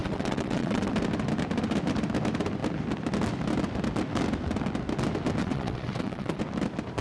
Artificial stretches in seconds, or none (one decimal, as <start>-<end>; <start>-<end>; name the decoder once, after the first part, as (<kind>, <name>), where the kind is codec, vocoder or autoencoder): 0.0-0.9 (vocoder, WaveNeXt); 5.4-6.4